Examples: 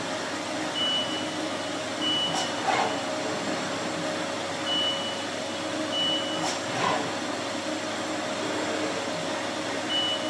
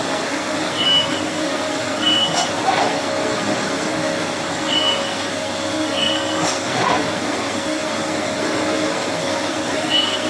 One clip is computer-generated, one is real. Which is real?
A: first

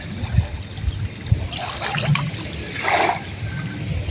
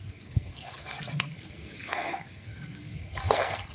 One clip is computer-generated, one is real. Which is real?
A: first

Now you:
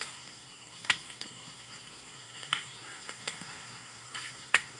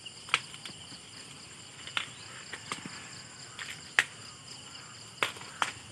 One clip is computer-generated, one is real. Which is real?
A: second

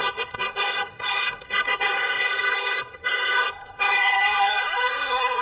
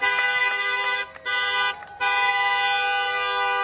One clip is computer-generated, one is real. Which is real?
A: second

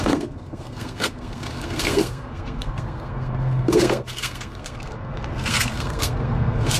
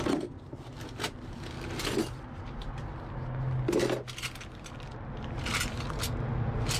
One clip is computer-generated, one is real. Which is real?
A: second